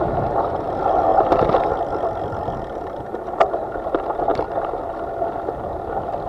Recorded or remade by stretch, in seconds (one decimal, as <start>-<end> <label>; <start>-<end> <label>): 0.0-6.3 recorded